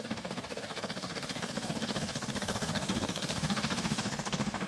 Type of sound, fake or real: fake